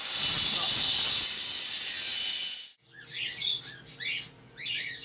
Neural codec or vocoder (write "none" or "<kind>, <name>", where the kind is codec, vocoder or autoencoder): none